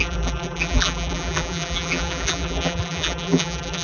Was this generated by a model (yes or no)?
yes